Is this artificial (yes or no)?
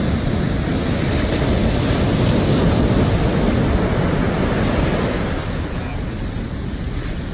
no